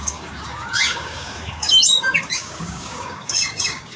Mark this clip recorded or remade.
remade